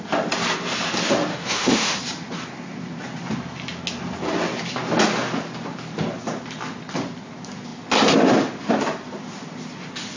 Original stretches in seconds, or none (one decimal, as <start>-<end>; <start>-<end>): 0.0-1.3; 2.0-10.2